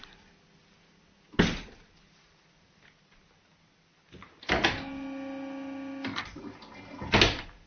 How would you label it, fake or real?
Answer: real